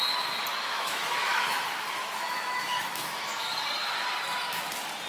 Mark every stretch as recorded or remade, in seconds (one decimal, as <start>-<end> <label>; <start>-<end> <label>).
0.0-0.5 recorded; 0.5-3.6 remade; 3.6-5.1 recorded